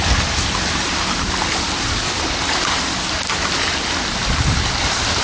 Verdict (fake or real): real